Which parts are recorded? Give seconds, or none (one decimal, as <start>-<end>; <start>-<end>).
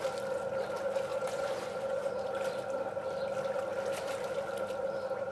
0.0-1.1; 2.0-5.3